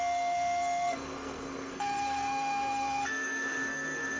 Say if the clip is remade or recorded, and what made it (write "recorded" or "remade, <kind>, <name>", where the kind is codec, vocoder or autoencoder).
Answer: remade, codec, SNAC